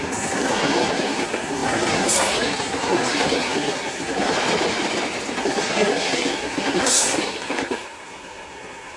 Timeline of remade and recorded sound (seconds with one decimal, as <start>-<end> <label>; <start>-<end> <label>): 0.0-4.3 remade; 4.3-5.4 recorded; 5.4-9.0 remade